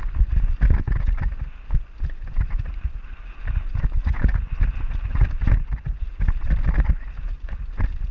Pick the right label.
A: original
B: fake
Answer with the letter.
A